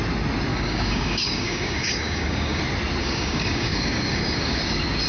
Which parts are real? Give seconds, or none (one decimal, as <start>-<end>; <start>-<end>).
0.0-0.5; 2.6-3.0; 4.6-5.1